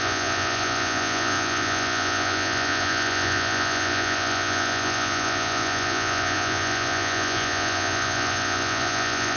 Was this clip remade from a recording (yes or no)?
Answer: yes